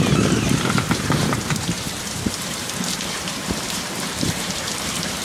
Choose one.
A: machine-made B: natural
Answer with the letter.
A